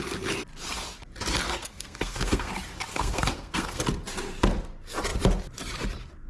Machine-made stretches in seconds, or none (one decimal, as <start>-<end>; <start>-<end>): 1.6-2.5; 2.9-3.8